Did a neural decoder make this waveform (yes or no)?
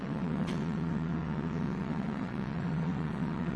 yes